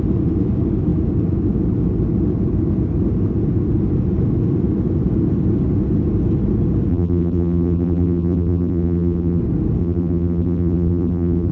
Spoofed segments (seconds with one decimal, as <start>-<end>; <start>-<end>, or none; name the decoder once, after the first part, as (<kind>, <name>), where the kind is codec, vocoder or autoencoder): 6.9-9.4 (vocoder, BigVGAN v2); 9.8-11.5